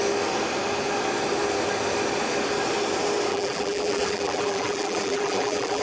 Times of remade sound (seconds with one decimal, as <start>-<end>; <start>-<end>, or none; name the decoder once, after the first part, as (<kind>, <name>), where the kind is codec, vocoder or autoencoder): 3.3-5.8 (vocoder, BigVGAN v2)